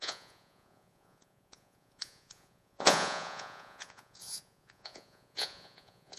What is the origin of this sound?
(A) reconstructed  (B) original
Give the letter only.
A